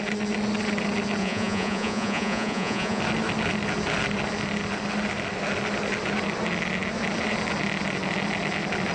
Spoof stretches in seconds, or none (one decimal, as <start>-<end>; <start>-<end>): 1.2-3.0